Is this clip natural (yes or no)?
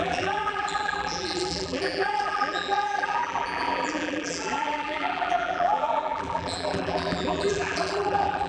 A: no